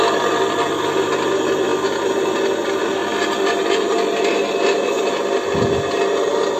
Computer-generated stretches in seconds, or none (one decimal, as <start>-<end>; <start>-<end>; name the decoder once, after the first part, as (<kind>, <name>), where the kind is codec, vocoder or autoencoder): none